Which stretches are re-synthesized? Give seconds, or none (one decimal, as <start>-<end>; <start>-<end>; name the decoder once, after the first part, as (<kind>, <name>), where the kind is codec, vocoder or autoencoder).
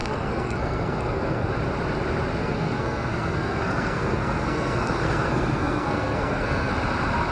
0.0-1.5 (codec, SNAC); 2.4-6.7